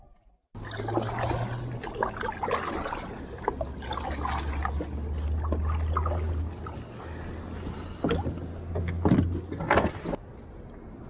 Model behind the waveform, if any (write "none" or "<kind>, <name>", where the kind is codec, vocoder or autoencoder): none